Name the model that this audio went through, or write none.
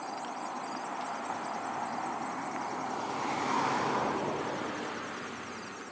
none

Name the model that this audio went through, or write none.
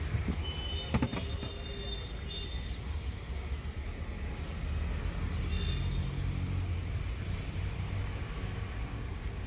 none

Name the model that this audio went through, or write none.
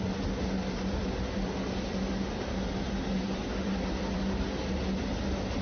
none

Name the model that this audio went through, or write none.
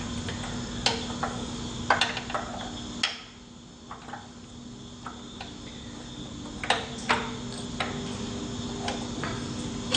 none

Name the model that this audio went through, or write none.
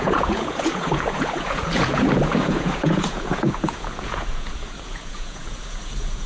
vocoder, Vocos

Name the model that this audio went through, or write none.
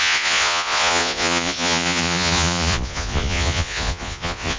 vocoder, Vocos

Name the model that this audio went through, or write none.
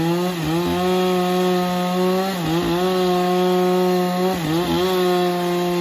none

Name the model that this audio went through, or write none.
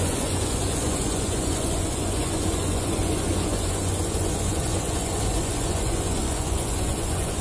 vocoder, Vocos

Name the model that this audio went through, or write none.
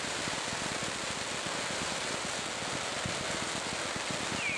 none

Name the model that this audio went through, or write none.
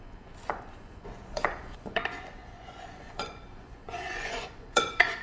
vocoder, Vocos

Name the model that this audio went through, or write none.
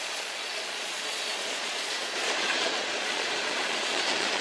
vocoder, Vocos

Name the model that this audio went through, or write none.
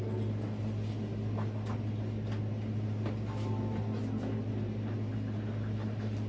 none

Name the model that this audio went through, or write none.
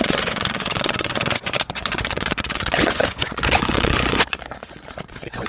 vocoder, Vocos